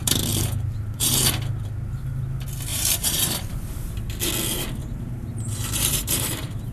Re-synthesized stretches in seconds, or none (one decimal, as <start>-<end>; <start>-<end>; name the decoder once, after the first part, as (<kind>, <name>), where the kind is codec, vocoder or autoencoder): 0.0-1.3 (vocoder, BigVGAN v2); 2.7-3.9; 4.8-6.7